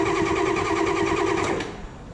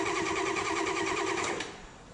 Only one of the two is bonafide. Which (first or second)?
first